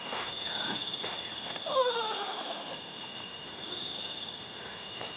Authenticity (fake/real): fake